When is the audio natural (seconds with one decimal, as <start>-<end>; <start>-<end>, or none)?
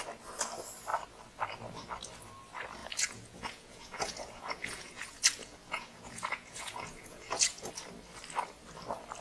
0.0-2.8; 7.7-9.2